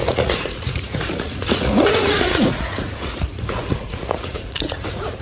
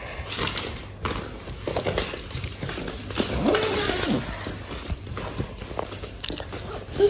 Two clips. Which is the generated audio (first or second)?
first